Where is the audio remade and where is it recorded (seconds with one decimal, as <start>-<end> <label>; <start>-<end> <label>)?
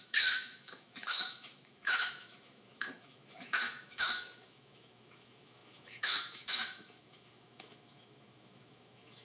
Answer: 0.0-9.2 remade